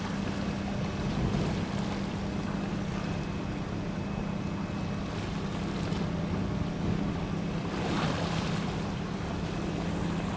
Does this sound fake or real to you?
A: real